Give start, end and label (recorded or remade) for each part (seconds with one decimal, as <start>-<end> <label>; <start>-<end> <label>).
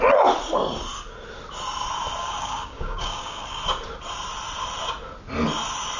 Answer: 0.0-2.2 recorded; 2.2-3.6 remade; 3.6-6.0 recorded